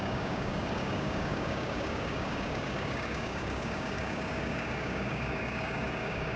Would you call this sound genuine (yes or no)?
no